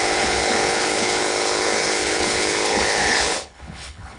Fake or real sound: fake